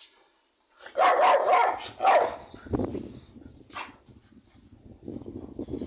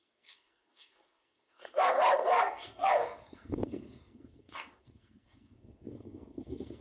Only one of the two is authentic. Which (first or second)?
first